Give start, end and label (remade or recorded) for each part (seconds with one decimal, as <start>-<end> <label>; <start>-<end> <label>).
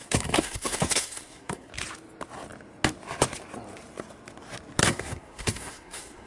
0.0-1.7 remade; 1.7-4.8 recorded; 4.8-6.3 remade